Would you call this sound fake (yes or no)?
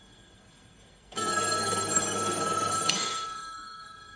yes